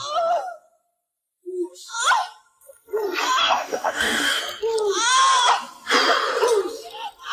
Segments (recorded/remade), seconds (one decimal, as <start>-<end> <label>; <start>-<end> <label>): 0.0-3.4 recorded; 3.4-4.4 remade; 4.4-7.3 recorded